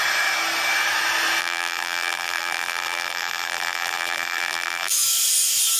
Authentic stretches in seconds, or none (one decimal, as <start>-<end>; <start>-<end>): 0.0-1.4; 4.9-5.8